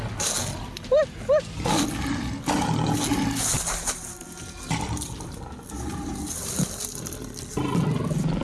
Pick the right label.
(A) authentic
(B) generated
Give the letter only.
A